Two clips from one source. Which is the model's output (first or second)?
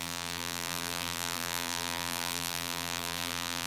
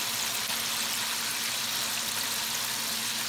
first